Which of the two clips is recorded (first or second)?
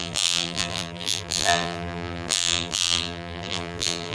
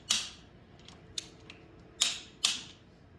second